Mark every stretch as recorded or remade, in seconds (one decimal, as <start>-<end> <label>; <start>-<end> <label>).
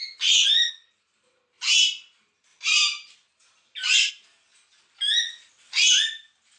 0.0-2.5 recorded; 2.5-4.1 remade; 4.1-6.6 recorded